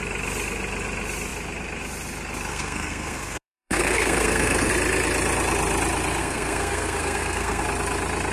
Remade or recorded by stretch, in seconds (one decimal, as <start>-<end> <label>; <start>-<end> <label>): 0.0-2.5 recorded; 2.5-4.7 remade; 4.7-6.2 recorded; 6.2-7.6 remade; 7.6-8.3 recorded